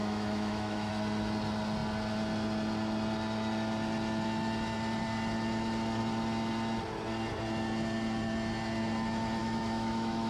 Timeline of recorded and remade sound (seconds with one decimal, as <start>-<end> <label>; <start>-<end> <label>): 0.0-0.9 remade; 0.9-9.4 recorded; 9.4-10.3 remade